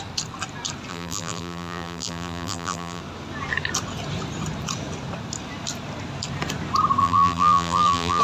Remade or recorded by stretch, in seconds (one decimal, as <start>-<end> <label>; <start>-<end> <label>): 0.0-0.9 recorded; 0.9-3.0 remade; 3.0-7.0 recorded; 7.0-8.2 remade